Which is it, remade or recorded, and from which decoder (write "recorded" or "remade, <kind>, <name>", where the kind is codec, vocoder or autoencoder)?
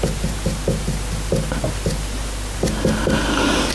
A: recorded